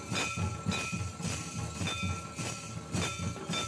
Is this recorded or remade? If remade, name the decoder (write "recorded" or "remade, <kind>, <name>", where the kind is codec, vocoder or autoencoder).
recorded